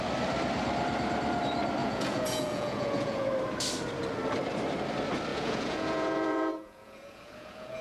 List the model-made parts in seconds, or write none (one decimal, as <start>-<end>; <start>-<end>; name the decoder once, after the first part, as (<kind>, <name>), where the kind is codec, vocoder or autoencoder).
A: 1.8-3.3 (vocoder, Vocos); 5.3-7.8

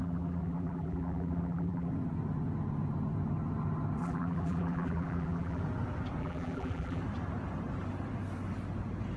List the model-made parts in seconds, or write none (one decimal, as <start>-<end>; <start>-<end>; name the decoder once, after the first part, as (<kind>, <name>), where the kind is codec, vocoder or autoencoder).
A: 0.0-1.9 (vocoder, BigVGAN v2); 4.0-5.6; 6.2-7.0

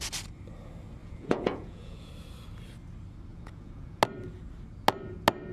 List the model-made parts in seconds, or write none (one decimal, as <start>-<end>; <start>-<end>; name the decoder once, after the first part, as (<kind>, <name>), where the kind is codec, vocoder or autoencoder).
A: 1.0-2.1 (vocoder, Vocos); 3.3-4.0